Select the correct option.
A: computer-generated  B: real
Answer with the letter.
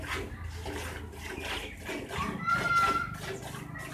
B